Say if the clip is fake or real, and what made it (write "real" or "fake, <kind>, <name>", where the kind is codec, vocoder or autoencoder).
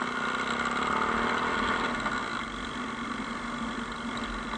real